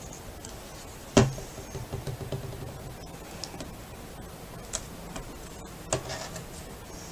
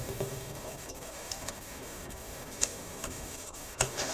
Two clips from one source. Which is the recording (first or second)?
first